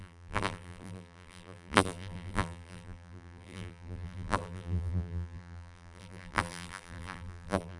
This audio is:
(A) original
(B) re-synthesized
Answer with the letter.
B